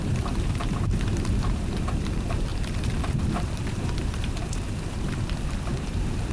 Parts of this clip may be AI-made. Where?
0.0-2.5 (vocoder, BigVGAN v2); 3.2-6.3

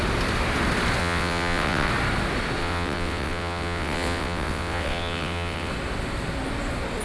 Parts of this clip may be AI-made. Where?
1.0-1.9 (vocoder, WaveNeXt); 2.6-5.7

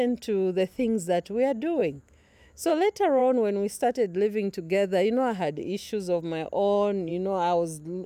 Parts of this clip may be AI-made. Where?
1.8-2.7 (autoencoder, DAC-VAE); 3.2-6.2

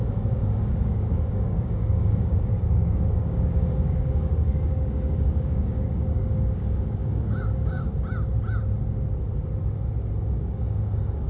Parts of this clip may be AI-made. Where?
0.0-7.9 (codec, DAC); 10.2-11.3

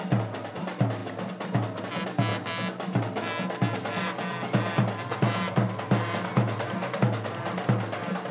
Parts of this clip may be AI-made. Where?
none

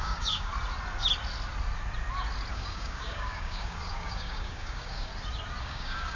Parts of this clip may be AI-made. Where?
0.0-0.5 (codec, DAC); 2.5-5.1; 5.6-6.2

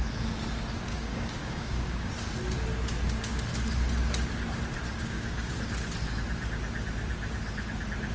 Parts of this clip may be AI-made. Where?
0.9-2.1 (codec, DAC); 5.0-5.5

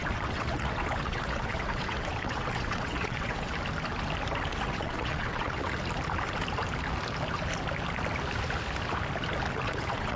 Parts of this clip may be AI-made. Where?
0.0-3.5 (vocoder, WaveNeXt); 4.5-5.8; 9.5-10.2